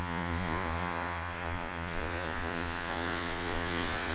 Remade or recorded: remade